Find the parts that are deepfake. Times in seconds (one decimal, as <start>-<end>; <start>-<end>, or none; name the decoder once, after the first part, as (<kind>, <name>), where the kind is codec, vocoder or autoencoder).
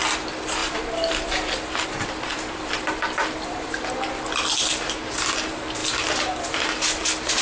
0.6-3.9 (vocoder, BigVGAN v2)